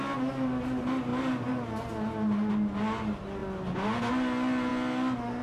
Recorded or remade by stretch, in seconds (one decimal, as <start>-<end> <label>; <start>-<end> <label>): 0.0-5.4 recorded